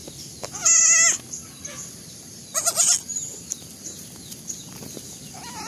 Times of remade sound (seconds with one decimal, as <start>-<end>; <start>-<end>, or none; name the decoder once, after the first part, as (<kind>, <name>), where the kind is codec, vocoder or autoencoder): 1.6-4.0 (vocoder, BigVGAN v2)